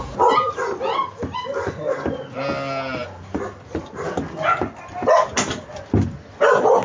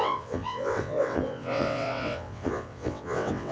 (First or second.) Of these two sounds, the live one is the first